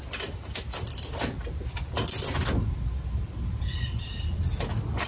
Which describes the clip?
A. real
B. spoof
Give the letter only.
A